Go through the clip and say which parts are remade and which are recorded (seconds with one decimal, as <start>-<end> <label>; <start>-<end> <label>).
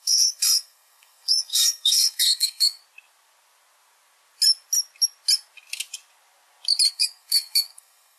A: 0.0-2.8 remade; 2.8-6.9 recorded; 6.9-8.2 remade